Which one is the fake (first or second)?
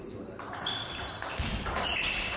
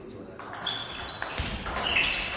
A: first